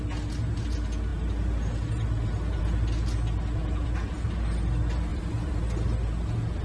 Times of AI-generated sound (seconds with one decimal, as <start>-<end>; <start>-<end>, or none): 3.6-4.3; 5.1-5.6